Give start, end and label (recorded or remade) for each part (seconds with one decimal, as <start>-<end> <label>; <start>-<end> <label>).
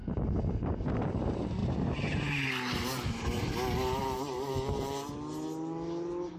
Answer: 0.0-0.7 remade; 0.7-1.6 recorded; 1.6-2.5 remade; 2.5-4.0 recorded; 4.0-5.1 remade; 5.1-6.4 recorded